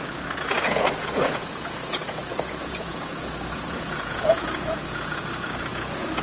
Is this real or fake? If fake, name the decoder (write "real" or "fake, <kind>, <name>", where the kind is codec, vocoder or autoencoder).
fake, vocoder, Vocos